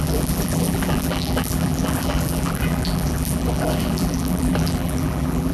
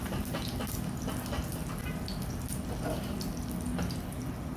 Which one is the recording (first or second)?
second